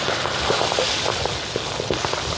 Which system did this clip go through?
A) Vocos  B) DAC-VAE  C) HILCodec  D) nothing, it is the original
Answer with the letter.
D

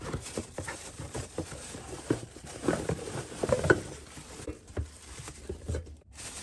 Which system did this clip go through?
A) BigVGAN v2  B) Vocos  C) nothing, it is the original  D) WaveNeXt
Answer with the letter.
A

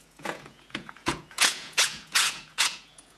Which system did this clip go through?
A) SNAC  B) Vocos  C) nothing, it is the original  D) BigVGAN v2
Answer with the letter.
B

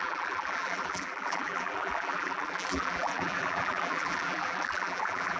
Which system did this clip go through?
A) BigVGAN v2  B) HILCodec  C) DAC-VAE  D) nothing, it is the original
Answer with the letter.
A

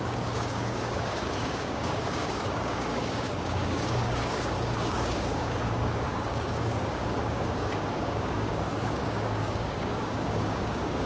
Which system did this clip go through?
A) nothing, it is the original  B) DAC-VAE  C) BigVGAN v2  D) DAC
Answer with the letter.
D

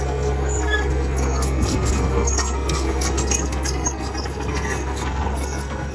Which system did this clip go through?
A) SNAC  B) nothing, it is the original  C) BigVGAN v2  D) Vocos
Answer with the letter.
A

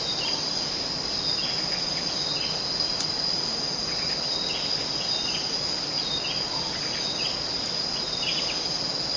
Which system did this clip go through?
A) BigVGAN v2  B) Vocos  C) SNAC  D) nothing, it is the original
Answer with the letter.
D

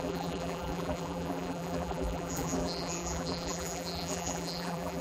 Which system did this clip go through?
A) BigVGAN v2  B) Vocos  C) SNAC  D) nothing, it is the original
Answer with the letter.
A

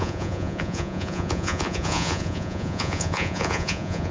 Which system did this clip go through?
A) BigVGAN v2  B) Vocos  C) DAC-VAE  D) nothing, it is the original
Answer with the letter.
B